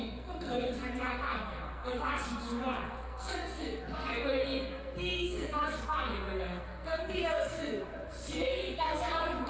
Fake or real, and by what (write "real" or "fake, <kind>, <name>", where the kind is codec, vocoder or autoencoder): fake, codec, SNAC